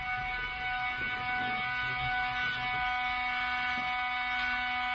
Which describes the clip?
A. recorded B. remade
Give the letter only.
A